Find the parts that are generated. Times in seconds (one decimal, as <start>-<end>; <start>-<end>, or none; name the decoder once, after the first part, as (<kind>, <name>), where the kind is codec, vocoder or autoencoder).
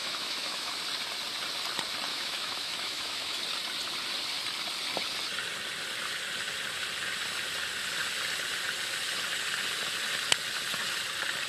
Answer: 0.0-0.8 (autoencoder, DAC-VAE); 2.1-3.4